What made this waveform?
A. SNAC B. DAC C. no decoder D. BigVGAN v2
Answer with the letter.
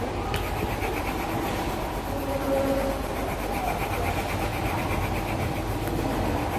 C